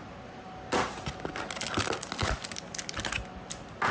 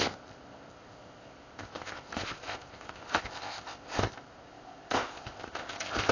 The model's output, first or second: second